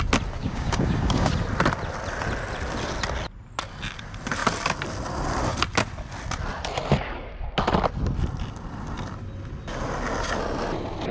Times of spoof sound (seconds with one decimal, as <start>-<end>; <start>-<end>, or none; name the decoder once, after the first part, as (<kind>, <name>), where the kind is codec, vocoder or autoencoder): 0.4-1.3 (codec, DAC)